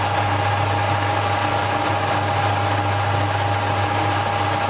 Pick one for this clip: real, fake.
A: real